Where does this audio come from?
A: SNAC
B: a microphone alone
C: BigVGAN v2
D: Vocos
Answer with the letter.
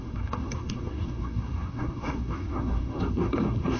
A